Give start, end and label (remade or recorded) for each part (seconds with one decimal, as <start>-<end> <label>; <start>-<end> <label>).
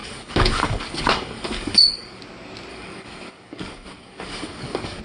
0.0-2.2 remade; 2.2-2.7 recorded; 2.7-5.0 remade